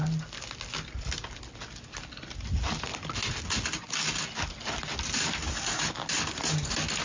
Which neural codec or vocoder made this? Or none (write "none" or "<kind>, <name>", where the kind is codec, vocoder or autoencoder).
none